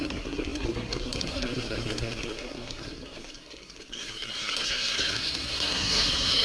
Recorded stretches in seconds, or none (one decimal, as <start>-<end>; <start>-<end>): none